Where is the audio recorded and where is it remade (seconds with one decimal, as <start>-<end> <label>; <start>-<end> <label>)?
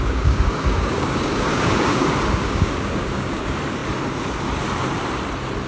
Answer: 0.0-3.4 remade; 3.4-5.7 recorded